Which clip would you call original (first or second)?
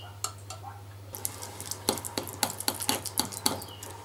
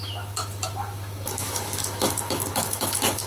first